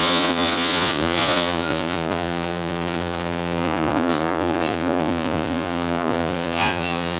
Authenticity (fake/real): fake